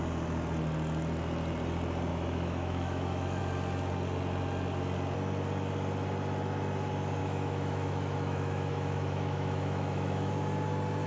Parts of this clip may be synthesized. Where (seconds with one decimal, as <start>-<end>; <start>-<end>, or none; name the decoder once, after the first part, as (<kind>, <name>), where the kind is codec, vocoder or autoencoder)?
2.1-3.4 (autoencoder, DAC-VAE); 7.2-10.3